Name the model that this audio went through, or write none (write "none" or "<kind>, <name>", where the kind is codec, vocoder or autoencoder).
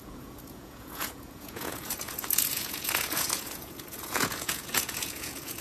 vocoder, Vocos